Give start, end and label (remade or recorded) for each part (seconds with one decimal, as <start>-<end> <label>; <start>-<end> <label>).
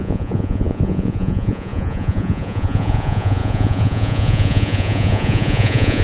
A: 0.0-6.0 remade